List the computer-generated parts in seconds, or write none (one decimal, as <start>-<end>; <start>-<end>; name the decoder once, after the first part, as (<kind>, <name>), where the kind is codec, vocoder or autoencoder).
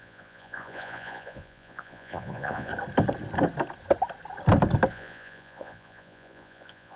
0.0-2.7 (vocoder, Vocos); 4.9-7.0